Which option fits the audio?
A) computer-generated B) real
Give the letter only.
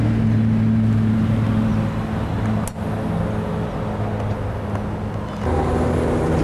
B